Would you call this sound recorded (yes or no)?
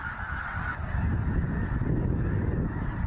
yes